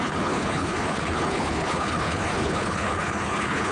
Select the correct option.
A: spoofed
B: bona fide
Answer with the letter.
A